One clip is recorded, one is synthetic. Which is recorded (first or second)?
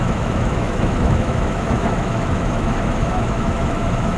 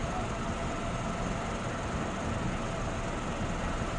second